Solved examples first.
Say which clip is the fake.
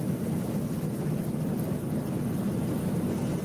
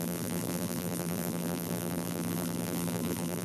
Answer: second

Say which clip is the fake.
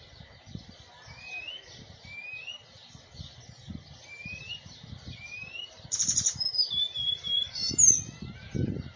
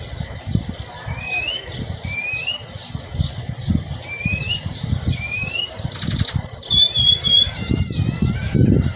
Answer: second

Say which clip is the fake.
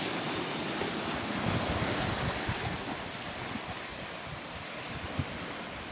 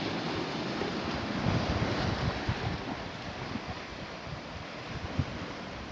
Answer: first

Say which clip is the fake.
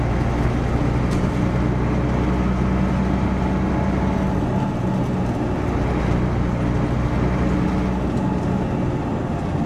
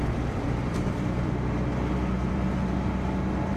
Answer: second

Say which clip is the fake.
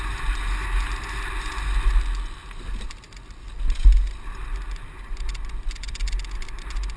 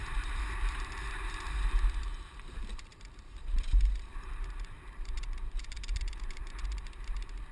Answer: second